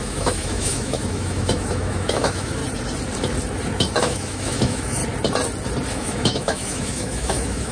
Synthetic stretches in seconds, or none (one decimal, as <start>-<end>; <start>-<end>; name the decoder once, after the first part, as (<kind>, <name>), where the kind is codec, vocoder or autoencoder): 0.0-2.6 (autoencoder, DAC-VAE); 4.0-5.0; 5.9-7.7